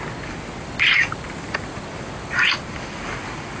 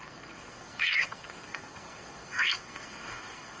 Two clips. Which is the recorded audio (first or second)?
first